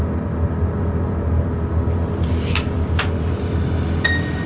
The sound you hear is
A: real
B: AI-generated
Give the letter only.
A